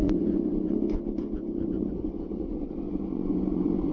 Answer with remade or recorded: remade